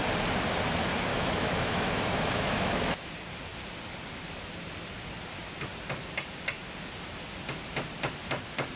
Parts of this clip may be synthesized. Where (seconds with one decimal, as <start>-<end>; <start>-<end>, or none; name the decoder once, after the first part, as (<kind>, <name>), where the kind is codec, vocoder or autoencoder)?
1.1-3.1 (autoencoder, DAC-VAE)